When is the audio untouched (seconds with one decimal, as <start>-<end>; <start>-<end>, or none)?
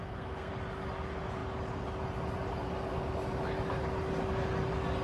0.5-5.0